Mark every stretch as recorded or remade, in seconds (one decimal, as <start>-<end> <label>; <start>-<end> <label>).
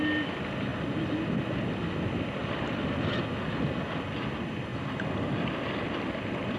0.0-2.4 recorded; 2.4-2.9 remade; 2.9-4.7 recorded; 4.7-6.6 remade